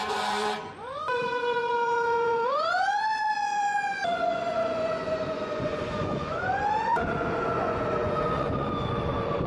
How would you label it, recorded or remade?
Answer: remade